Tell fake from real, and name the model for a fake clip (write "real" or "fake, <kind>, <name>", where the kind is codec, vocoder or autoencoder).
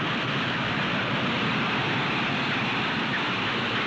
real